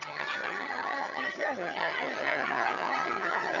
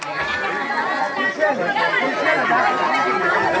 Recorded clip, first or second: second